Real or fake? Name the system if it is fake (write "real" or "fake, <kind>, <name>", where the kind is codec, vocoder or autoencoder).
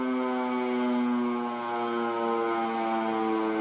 real